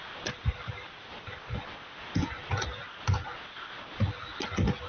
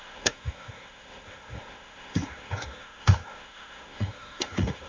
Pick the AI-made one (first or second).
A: second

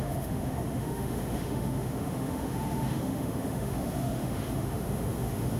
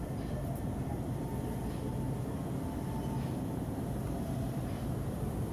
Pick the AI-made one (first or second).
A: first